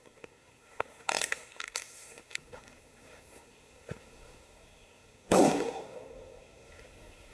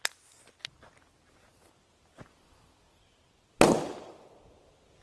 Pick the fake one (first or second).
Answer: first